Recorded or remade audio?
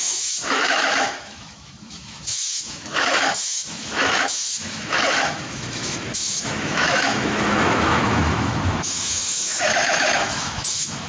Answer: remade